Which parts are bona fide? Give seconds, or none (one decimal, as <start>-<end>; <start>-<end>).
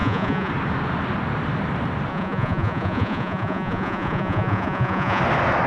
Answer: 0.5-2.1; 5.2-5.7